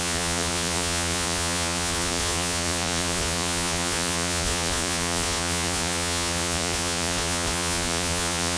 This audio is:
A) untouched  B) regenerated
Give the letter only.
B